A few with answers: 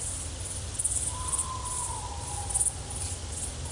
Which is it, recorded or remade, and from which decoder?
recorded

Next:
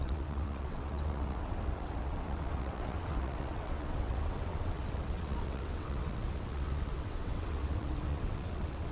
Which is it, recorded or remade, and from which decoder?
remade, vocoder, WaveNeXt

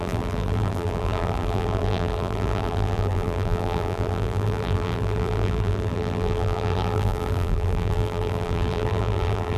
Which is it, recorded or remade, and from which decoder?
remade, vocoder, BigVGAN v2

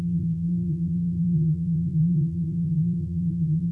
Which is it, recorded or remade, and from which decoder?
remade, vocoder, BigVGAN v2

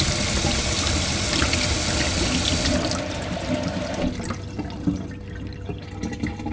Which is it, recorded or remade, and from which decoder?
recorded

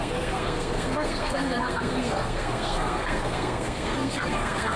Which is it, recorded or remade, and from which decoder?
remade, codec, SNAC